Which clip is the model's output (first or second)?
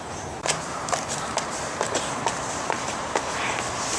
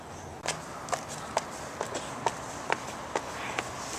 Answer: first